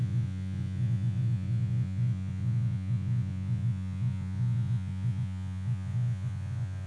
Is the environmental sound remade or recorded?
remade